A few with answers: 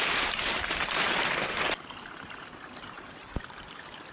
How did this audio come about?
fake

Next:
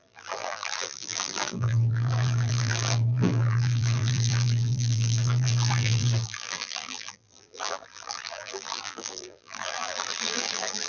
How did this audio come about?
fake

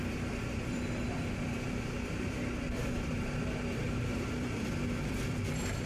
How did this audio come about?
fake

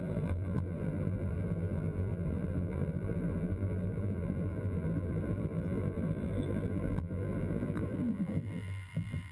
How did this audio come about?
fake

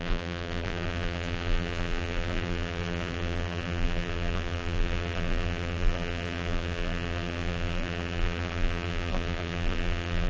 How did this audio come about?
fake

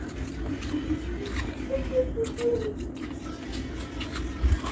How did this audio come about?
real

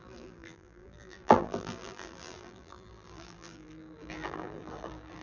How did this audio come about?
fake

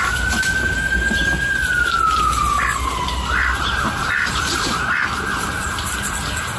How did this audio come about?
real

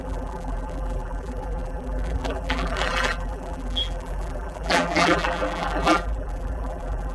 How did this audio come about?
fake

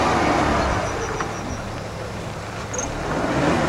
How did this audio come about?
real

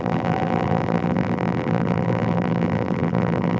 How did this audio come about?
fake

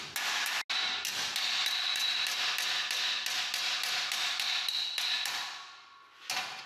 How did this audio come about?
real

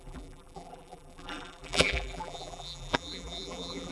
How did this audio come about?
fake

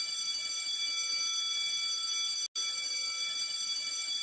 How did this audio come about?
real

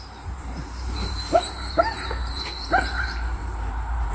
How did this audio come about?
fake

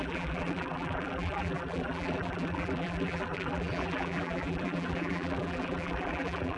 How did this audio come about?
fake